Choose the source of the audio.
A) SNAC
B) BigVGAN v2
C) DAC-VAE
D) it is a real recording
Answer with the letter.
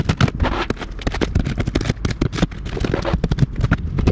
D